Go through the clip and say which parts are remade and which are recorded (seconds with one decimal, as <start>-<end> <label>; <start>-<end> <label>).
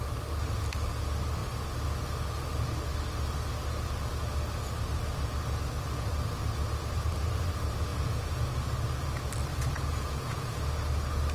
0.0-7.9 recorded; 7.9-8.5 remade; 8.5-9.5 recorded; 9.5-10.6 remade; 10.6-11.3 recorded